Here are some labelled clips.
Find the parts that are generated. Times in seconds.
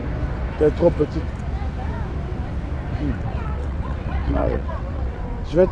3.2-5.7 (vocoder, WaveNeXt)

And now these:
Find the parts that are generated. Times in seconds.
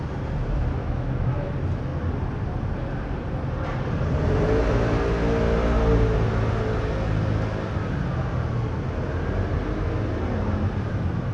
0.8-1.5 (autoencoder, DAC-VAE)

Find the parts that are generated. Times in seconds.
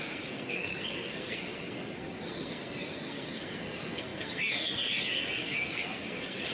0.0-6.5 (codec, SNAC)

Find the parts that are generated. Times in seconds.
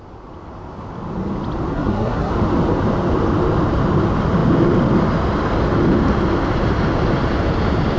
1.7-2.3 (codec, SNAC)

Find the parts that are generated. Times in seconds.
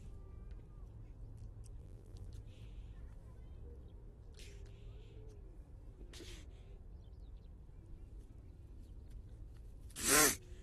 1.8-2.3 (vocoder, BigVGAN v2)